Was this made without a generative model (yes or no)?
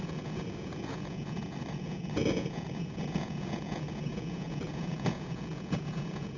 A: no